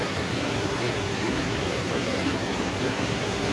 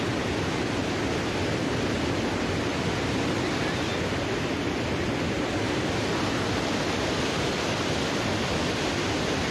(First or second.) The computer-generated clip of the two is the first